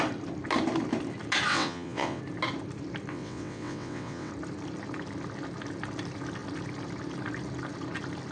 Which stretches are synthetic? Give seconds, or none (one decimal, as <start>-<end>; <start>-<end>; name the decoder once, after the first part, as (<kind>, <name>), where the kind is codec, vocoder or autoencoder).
1.5-2.2 (vocoder, WaveNeXt); 3.1-4.3